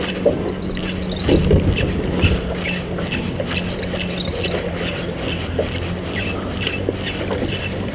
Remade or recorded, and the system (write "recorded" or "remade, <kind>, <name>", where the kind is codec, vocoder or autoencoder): recorded